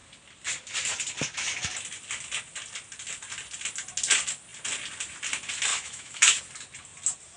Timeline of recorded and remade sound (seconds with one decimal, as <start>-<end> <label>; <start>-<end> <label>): 0.0-5.7 recorded; 5.7-6.4 remade; 6.4-7.4 recorded